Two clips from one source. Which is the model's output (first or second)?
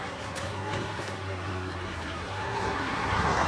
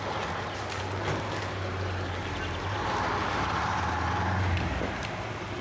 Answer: first